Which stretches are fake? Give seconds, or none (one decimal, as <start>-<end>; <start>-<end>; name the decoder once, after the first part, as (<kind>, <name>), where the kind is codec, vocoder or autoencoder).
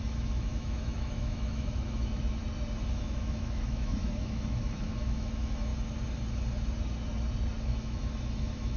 0.0-2.4 (autoencoder, DAC-VAE); 3.0-5.7; 7.6-8.8